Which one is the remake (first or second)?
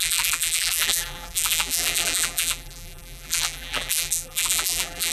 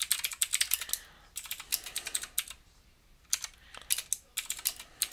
first